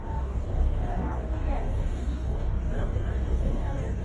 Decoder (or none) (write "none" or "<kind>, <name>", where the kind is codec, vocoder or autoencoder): codec, DAC